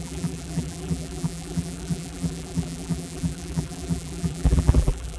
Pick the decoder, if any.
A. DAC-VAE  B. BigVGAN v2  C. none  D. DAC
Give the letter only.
B